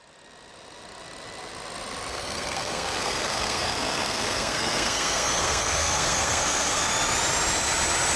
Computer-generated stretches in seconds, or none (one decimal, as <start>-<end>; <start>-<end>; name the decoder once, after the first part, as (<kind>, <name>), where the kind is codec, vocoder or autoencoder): 2.1-6.9 (codec, SNAC)